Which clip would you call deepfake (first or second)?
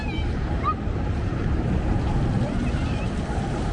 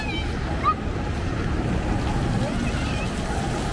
first